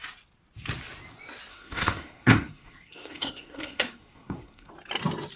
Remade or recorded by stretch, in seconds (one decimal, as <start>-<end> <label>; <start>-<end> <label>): 0.0-1.5 recorded; 1.5-4.7 remade; 4.7-5.4 recorded